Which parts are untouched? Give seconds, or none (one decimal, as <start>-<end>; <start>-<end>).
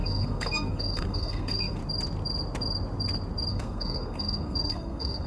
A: 1.8-3.5